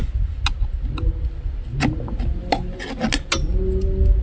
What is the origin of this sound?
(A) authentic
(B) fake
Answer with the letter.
A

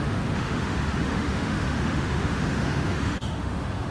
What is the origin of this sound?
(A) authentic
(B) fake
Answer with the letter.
B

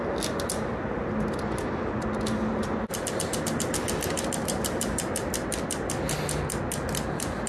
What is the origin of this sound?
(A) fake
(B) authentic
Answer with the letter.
B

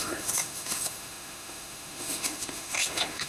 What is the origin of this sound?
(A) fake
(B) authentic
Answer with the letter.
A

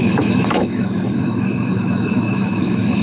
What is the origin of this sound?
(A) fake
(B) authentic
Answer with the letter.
A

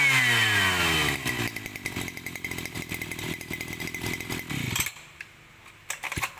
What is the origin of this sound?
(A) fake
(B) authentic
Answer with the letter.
B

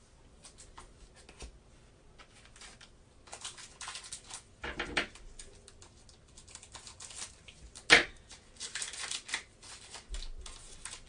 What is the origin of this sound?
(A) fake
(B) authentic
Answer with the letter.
B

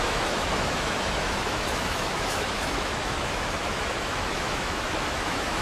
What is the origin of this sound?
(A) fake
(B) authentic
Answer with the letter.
A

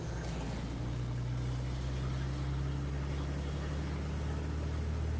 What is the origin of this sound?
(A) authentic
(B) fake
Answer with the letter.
A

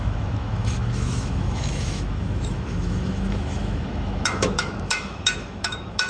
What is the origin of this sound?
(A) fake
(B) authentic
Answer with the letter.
A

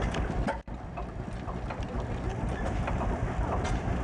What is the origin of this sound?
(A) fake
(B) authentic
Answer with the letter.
B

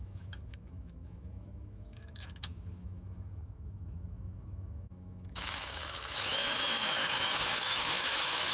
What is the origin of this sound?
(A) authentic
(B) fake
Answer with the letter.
B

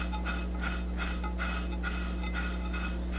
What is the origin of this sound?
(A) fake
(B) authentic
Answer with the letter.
B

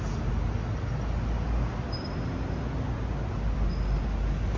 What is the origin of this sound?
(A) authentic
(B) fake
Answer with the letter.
A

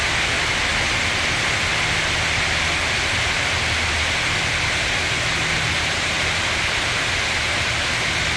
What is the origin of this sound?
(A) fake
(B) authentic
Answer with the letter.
B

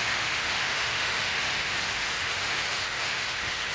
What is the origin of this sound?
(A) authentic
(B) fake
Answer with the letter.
B